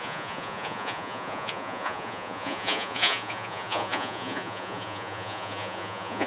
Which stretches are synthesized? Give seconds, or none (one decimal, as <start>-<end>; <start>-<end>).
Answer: 0.0-6.3